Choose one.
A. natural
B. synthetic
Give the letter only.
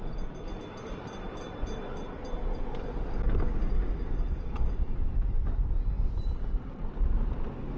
A